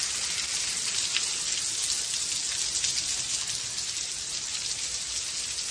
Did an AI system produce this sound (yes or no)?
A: no